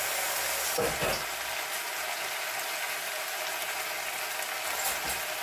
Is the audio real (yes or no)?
yes